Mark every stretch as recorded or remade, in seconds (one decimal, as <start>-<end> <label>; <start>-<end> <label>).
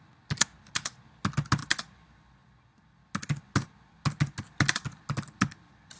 0.0-6.0 recorded